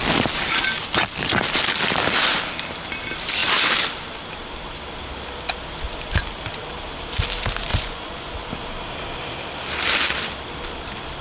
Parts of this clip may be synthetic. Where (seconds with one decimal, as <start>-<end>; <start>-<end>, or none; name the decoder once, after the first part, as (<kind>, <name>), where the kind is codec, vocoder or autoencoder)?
7.7-8.3 (vocoder, Vocos)